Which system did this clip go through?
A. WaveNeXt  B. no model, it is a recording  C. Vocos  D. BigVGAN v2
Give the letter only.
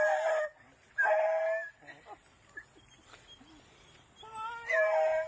B